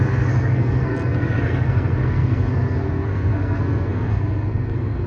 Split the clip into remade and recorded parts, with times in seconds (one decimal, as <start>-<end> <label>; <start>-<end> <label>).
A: 0.0-5.1 remade